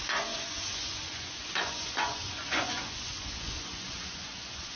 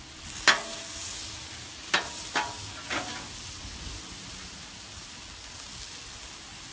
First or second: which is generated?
first